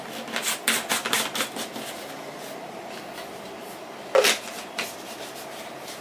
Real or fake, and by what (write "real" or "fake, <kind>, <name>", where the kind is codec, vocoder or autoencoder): real